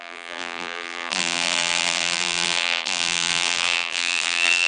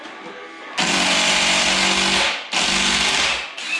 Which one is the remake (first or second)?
first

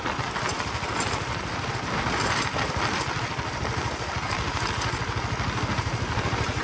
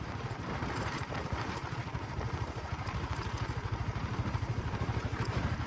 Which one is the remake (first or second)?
second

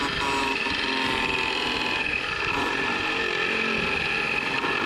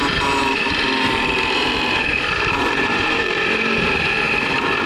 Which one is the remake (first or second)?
second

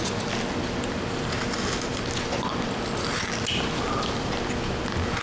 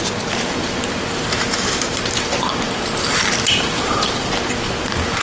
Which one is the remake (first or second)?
second